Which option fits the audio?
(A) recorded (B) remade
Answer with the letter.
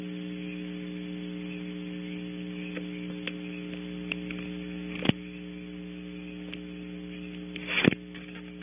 A